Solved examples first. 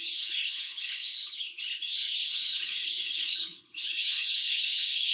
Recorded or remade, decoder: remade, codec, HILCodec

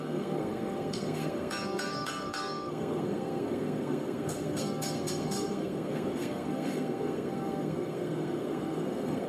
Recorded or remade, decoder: remade, codec, SNAC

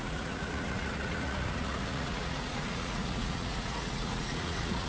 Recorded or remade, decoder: remade, vocoder, Vocos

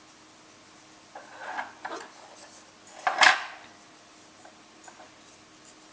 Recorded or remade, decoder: recorded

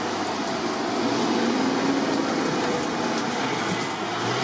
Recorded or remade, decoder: recorded